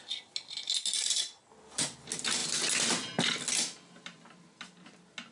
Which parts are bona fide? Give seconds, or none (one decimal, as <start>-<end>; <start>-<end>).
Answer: 0.0-5.3